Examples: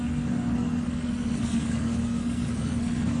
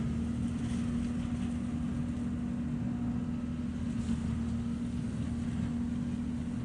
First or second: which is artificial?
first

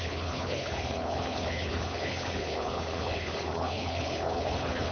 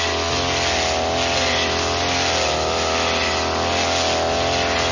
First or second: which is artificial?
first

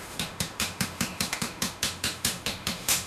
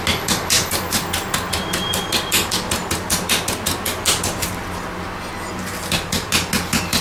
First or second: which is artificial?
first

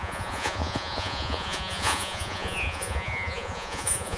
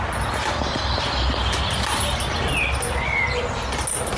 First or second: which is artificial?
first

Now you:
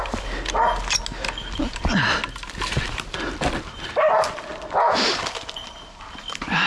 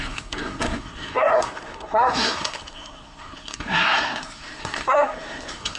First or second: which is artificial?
second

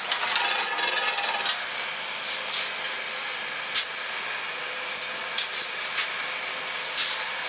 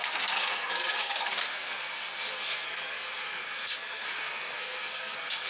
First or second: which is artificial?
second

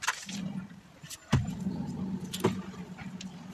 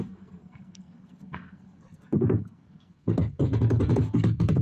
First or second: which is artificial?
second